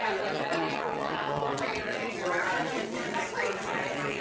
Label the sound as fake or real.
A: fake